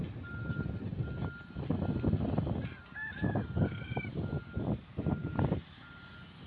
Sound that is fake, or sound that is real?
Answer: real